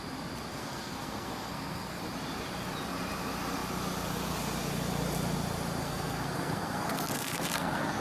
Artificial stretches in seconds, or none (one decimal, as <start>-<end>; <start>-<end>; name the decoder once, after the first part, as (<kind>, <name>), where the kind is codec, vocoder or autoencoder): 0.5-2.0 (codec, SNAC); 5.8-8.0